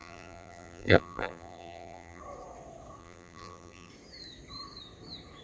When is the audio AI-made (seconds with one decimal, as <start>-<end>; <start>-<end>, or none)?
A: 0.0-2.2; 3.0-3.9

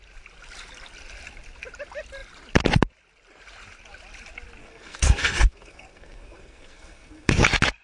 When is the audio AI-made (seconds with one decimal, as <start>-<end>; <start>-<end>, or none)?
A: 4.6-7.3